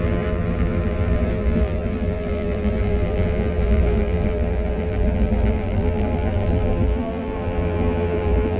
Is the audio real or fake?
fake